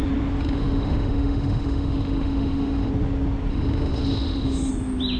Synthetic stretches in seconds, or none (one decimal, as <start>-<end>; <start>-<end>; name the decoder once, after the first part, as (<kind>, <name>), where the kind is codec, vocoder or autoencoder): 0.4-2.9 (autoencoder, DAC-VAE); 3.5-4.7